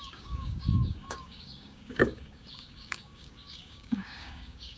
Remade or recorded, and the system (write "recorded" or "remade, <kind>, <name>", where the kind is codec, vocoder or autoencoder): remade, codec, DAC